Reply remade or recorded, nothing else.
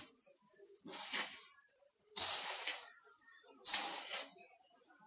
recorded